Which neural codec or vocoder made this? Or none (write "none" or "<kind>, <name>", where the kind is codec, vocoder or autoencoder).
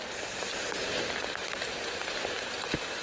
vocoder, BigVGAN v2